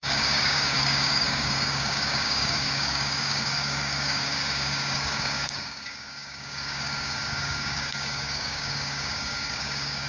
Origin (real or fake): fake